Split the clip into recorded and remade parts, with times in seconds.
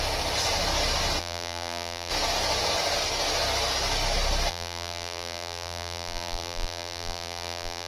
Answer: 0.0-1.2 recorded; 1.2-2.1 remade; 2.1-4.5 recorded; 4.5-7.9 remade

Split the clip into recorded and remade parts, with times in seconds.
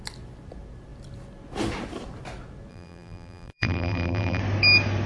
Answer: 0.0-2.7 recorded; 2.7-4.4 remade; 4.4-5.1 recorded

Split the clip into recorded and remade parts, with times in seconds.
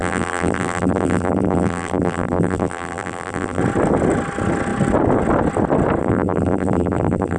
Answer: 0.0-3.6 remade; 3.6-6.0 recorded; 6.0-7.4 remade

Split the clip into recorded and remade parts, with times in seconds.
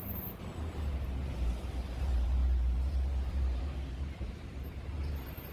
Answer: 0.0-2.0 recorded; 2.0-5.5 remade